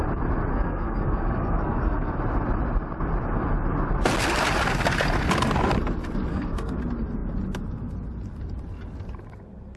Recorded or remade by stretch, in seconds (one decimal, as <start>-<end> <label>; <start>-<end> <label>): 0.0-0.5 recorded; 0.5-2.1 remade; 2.1-6.3 recorded; 6.3-6.8 remade; 6.8-9.8 recorded